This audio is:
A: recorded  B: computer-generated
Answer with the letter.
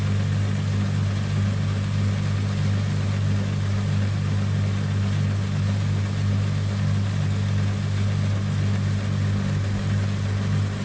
A